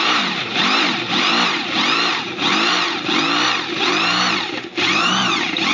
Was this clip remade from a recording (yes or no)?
no